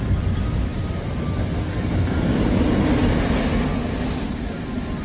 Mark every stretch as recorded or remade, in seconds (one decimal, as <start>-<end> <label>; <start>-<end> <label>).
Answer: 0.0-5.0 recorded